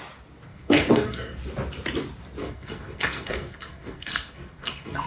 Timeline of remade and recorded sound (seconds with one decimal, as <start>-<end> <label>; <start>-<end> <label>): 0.0-0.5 recorded; 0.5-1.4 remade; 1.4-2.4 recorded; 2.4-5.1 remade